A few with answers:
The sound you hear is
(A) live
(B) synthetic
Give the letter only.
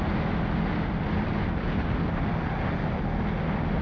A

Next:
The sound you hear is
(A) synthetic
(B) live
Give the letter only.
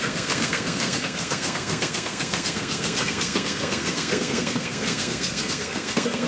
A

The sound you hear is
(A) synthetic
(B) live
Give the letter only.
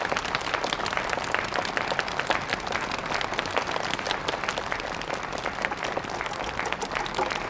B